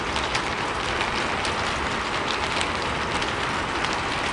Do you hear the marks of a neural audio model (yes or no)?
no